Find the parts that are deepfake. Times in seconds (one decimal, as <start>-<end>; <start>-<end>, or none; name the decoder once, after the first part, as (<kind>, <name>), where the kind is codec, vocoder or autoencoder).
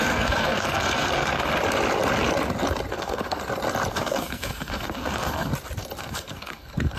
0.0-1.5 (codec, SNAC); 2.9-3.4; 3.9-5.5; 6.0-7.0